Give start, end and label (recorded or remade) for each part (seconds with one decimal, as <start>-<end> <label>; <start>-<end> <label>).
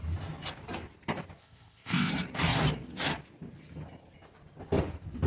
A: 0.0-1.4 recorded; 1.4-2.1 remade; 2.1-5.3 recorded